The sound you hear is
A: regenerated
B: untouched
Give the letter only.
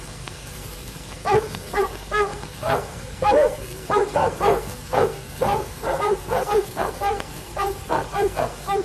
A